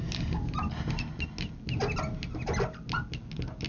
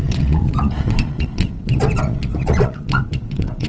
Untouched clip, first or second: first